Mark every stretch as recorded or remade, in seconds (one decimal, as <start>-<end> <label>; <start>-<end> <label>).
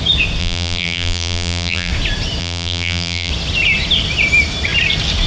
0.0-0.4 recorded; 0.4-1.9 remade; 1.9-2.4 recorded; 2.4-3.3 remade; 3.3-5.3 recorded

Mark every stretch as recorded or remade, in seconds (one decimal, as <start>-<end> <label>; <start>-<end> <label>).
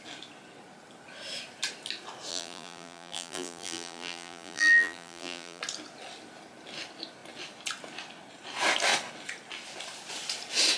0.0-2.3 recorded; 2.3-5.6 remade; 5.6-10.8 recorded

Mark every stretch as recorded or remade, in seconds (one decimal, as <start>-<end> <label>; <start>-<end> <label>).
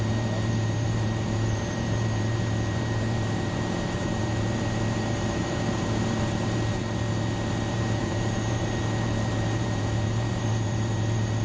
0.0-6.8 remade; 6.8-7.7 recorded; 7.7-11.4 remade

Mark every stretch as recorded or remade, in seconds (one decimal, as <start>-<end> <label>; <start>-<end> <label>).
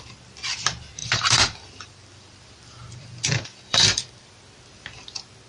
0.0-1.0 recorded; 1.0-4.3 remade; 4.3-5.5 recorded